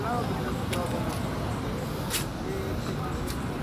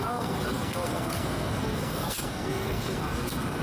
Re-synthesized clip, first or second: second